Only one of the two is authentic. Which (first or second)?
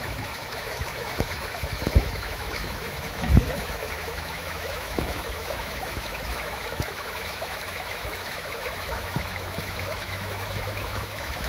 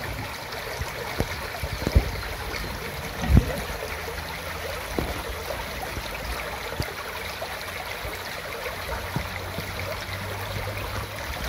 second